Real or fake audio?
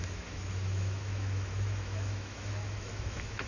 fake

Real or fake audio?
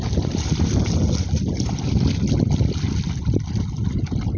real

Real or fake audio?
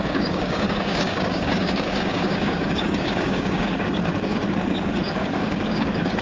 fake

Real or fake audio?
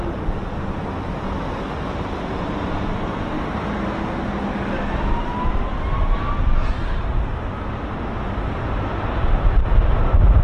real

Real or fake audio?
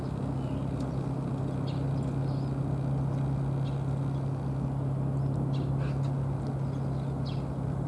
real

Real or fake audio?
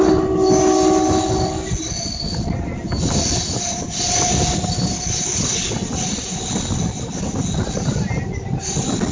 real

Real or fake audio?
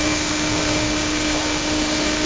fake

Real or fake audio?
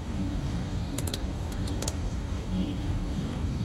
fake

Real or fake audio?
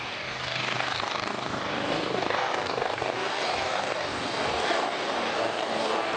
fake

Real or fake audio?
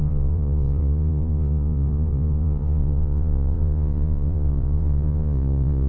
fake